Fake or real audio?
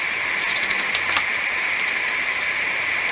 real